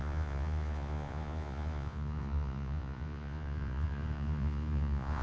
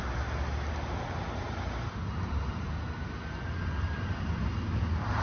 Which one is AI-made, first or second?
first